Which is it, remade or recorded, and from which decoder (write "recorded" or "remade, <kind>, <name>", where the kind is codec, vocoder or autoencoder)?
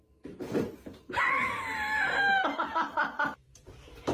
remade, vocoder, BigVGAN v2